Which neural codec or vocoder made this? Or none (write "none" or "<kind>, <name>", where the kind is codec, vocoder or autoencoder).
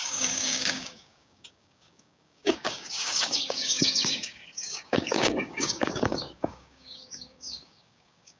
codec, DAC